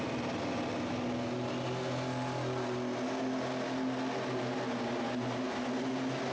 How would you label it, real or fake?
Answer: real